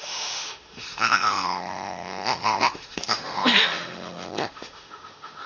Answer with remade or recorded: remade